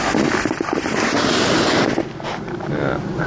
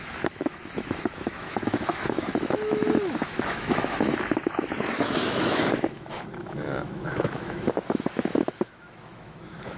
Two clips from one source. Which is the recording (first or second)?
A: first